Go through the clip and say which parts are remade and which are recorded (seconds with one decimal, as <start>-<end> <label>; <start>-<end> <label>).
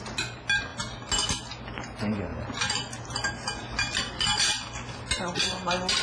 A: 0.0-6.0 recorded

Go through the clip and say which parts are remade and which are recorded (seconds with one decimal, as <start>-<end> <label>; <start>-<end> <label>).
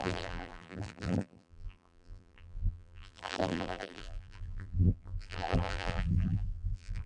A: 0.0-7.1 remade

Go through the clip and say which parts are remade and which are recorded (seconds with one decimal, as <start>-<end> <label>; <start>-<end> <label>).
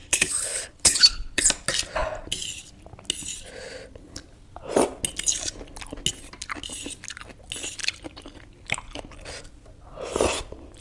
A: 0.0-1.4 remade; 1.4-10.8 recorded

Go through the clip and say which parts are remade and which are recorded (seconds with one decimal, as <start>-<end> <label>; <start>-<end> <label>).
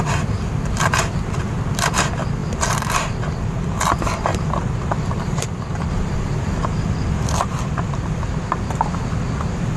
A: 0.0-2.4 recorded; 2.4-6.8 remade; 6.8-9.8 recorded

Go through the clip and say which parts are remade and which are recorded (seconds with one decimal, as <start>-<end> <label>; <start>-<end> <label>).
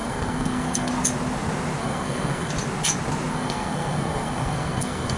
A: 0.0-0.9 remade; 0.9-1.8 recorded; 1.8-2.5 remade; 2.5-3.3 recorded; 3.3-5.2 remade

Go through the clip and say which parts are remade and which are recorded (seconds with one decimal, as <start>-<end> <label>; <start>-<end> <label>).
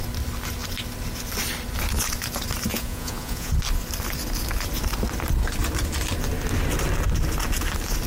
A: 0.0-2.7 recorded; 2.7-3.5 remade; 3.5-8.1 recorded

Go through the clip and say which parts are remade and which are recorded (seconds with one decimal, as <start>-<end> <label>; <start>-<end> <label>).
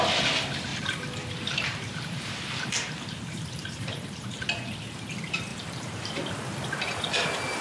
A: 0.0-0.7 recorded; 0.7-4.4 remade; 4.4-5.5 recorded; 5.5-6.2 remade; 6.2-7.6 recorded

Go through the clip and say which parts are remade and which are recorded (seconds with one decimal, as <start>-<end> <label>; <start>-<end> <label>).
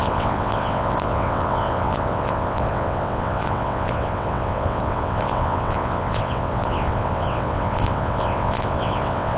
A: 0.0-9.4 remade